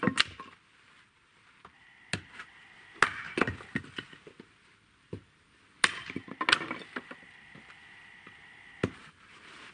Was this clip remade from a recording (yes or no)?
no